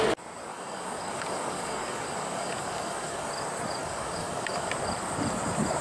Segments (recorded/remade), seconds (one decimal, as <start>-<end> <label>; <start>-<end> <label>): 0.0-0.5 recorded; 0.5-3.3 remade; 3.3-3.8 recorded; 3.8-4.7 remade; 4.7-5.8 recorded